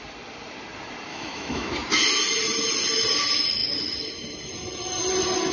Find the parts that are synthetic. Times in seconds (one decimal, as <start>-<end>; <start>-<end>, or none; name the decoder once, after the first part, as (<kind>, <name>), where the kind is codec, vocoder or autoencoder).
1.1-1.7 (autoencoder, DAC-VAE)